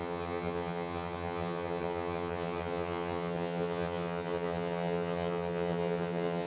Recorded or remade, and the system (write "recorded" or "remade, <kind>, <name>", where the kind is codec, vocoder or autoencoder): remade, vocoder, HiFi-GAN